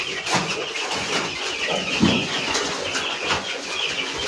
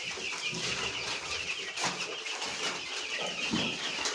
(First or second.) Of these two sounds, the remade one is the first